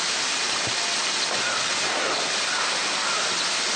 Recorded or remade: recorded